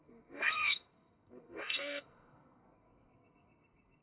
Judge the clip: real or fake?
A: fake